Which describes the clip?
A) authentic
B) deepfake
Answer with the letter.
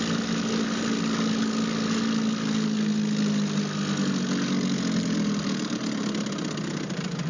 A